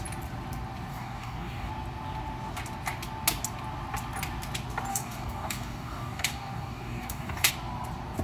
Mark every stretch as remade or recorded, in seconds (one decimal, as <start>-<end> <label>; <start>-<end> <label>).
0.0-0.9 recorded; 0.9-1.7 remade; 1.7-4.9 recorded; 4.9-7.5 remade; 7.5-8.2 recorded